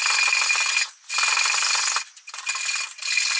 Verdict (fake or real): real